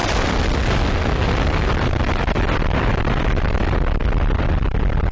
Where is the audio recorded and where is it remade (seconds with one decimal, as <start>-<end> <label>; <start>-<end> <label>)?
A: 0.0-2.9 recorded; 2.9-3.7 remade; 3.7-5.1 recorded